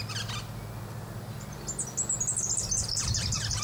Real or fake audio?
real